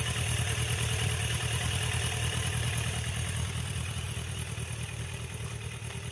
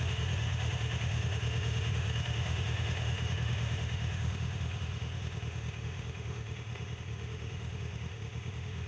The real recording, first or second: first